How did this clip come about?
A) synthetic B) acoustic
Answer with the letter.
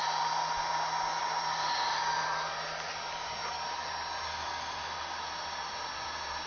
B